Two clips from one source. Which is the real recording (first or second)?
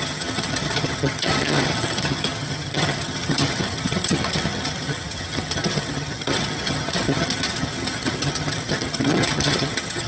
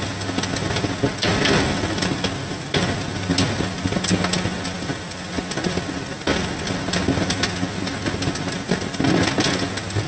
second